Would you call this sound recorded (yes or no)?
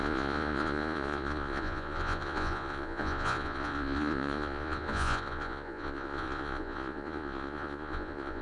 no